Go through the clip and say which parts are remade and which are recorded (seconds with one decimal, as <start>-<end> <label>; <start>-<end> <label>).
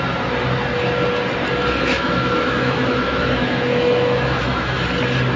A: 0.0-1.6 recorded; 1.6-4.8 remade; 4.8-5.4 recorded